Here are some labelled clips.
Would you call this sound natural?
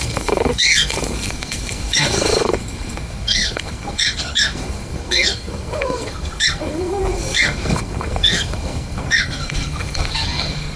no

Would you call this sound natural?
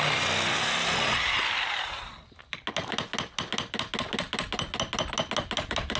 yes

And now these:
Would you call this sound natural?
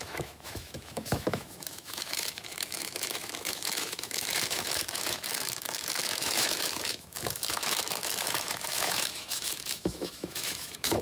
no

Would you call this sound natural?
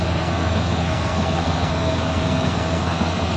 no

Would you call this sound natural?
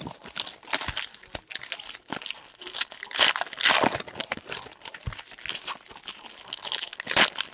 yes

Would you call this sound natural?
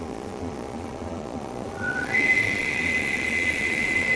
no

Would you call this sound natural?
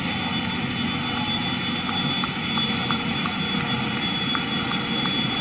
yes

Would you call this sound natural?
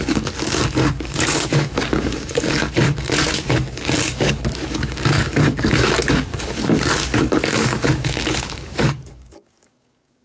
no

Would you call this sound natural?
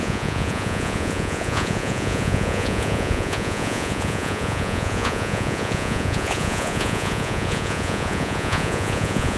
no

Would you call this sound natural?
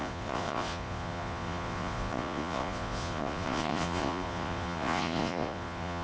no